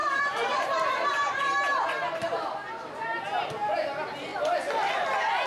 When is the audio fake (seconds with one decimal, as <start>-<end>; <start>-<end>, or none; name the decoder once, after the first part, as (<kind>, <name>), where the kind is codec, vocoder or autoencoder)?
0.0-1.4 (vocoder, BigVGAN v2)

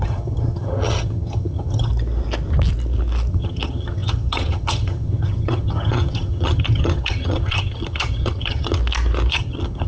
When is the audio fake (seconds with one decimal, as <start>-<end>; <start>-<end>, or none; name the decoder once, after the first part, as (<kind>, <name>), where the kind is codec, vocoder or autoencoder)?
0.0-1.9 (vocoder, HiFi-GAN); 3.3-8.8; 9.3-9.9

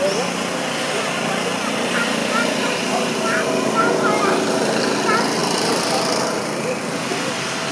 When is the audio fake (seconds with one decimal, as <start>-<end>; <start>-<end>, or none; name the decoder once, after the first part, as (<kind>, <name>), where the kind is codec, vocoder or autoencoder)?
2.2-3.2 (vocoder, BigVGAN v2); 5.4-6.8

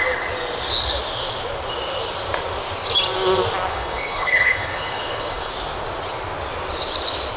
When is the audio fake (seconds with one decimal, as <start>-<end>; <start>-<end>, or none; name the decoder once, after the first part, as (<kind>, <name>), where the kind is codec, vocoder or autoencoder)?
3.7-5.5 (codec, HILCodec)

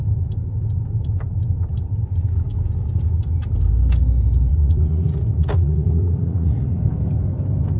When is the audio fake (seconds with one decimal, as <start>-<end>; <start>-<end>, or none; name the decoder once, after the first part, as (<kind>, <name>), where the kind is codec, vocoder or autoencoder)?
4.5-6.8 (vocoder, Vocos)

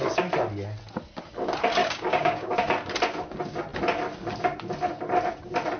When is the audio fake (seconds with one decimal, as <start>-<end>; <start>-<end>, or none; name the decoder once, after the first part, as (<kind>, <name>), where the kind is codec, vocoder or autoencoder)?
1.8-2.6 (codec, DAC)